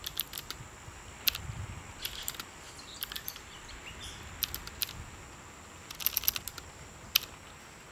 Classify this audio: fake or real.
real